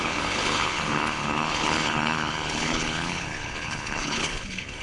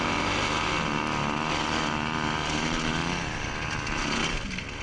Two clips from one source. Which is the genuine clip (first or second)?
second